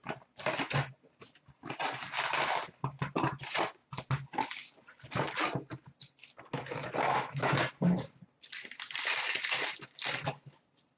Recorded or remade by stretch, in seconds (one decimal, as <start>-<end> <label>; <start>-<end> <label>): 0.0-0.9 recorded; 0.9-3.8 remade; 3.8-8.2 recorded; 8.2-11.0 remade